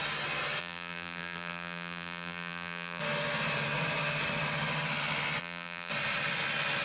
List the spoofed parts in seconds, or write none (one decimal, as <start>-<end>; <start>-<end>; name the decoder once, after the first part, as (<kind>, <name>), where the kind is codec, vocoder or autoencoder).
0.6-3.0 (vocoder, BigVGAN v2); 5.4-5.9